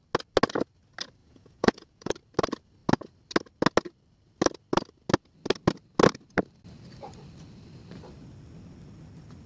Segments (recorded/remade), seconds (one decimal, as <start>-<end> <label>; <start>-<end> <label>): 0.0-1.2 recorded; 1.2-2.1 remade; 2.1-9.5 recorded